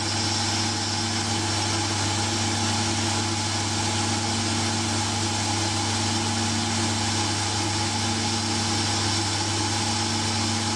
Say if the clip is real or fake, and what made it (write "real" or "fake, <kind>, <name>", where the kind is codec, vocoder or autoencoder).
real